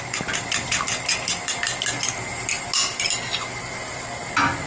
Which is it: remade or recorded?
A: recorded